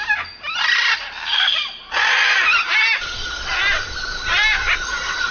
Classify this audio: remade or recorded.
recorded